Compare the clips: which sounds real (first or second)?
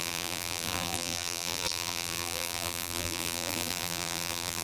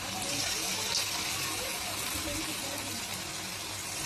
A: second